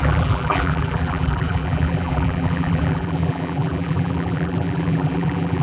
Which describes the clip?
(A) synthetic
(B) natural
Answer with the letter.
A